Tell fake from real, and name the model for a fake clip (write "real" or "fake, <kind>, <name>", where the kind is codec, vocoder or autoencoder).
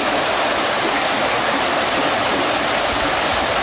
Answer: real